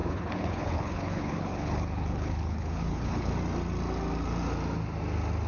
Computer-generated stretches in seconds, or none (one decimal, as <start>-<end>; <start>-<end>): 0.0-3.3

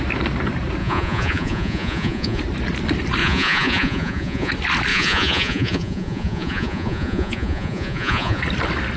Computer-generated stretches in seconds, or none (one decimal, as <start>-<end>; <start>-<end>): 0.8-2.4; 3.2-4.5; 4.9-8.4